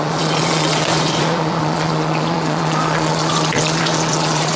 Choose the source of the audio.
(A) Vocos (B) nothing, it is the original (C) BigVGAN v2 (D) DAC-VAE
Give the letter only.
A